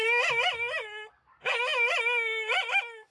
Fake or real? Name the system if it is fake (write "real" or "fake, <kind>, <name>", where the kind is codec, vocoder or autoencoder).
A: real